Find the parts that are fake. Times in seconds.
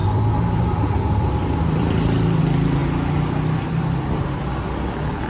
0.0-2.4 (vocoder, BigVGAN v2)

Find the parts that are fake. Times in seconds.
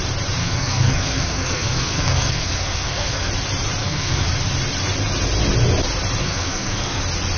0.4-3.3 (codec, SNAC); 3.8-4.3; 6.2-7.0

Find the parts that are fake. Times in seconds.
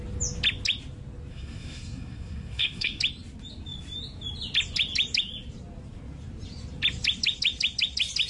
1.3-3.0 (codec, SNAC)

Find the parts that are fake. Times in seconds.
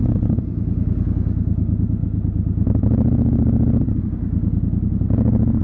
none